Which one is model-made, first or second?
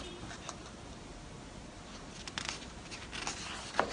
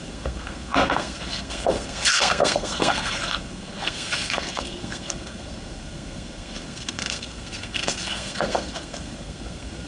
second